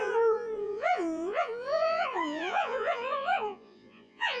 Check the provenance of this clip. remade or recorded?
remade